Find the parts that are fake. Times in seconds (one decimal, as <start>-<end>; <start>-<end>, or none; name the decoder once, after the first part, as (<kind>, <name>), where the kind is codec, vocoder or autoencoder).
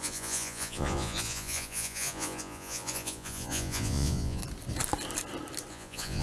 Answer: 0.0-4.4 (vocoder, Vocos); 5.7-6.2